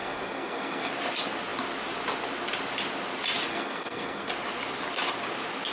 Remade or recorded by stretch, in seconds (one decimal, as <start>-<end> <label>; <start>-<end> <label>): 0.0-0.9 remade; 0.9-3.5 recorded; 3.5-4.3 remade; 4.3-5.7 recorded